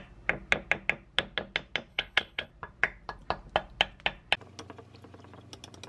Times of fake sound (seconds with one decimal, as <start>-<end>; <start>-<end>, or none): 1.9-2.5